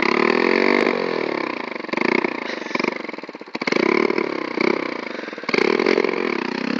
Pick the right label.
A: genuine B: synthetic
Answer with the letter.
A